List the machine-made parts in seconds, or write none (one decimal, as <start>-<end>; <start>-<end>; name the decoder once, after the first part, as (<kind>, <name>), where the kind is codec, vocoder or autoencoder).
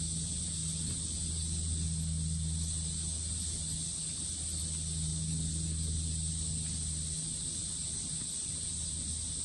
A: none